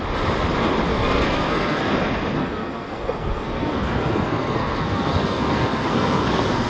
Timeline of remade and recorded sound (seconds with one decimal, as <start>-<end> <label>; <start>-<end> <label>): 0.0-0.9 recorded; 0.9-1.9 remade; 1.9-2.4 recorded; 2.4-6.7 remade